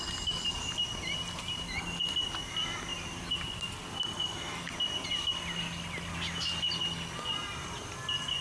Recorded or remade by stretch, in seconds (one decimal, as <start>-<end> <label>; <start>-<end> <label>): 0.0-8.4 recorded